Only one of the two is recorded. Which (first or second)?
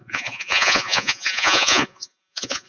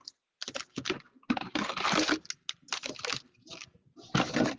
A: second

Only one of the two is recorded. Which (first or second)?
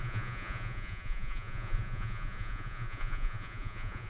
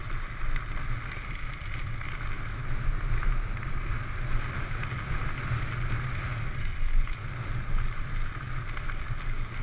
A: second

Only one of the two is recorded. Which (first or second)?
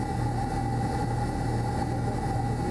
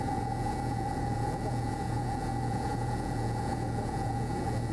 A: first